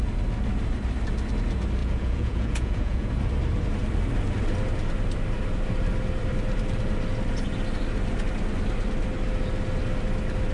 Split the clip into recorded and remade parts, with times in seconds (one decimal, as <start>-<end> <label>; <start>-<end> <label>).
0.0-1.8 recorded; 1.8-3.1 remade; 3.1-10.5 recorded

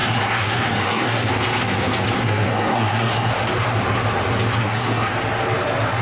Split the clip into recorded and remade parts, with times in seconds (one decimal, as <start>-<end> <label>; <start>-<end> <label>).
0.0-1.3 remade; 1.3-2.2 recorded; 2.2-3.3 remade; 3.3-4.6 recorded; 4.6-5.1 remade; 5.1-6.0 recorded

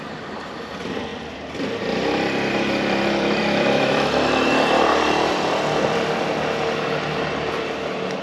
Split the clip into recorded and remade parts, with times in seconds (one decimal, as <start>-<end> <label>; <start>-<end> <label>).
0.0-1.1 recorded; 1.1-6.0 remade; 6.0-8.2 recorded

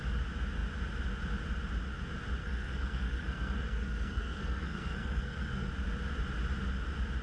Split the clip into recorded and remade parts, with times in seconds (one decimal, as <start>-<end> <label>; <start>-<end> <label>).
0.0-2.4 recorded; 2.4-5.7 remade; 5.7-7.2 recorded

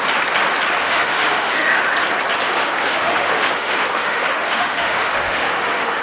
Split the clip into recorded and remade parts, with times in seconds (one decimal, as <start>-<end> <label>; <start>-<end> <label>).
0.0-0.8 recorded; 0.8-1.8 remade; 1.8-2.4 recorded; 2.4-6.0 remade

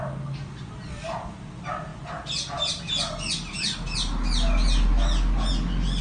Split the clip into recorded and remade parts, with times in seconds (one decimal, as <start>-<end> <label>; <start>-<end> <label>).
0.0-6.0 recorded

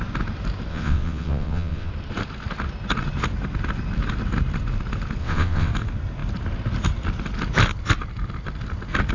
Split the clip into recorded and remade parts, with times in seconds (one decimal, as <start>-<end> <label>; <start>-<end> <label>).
0.0-0.7 recorded; 0.7-1.9 remade; 1.9-5.2 recorded; 5.2-5.7 remade; 5.7-9.1 recorded